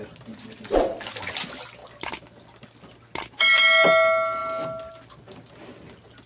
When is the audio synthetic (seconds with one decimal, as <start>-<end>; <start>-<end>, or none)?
none